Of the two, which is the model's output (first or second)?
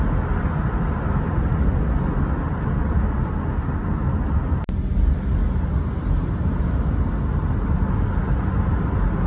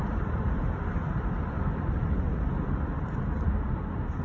second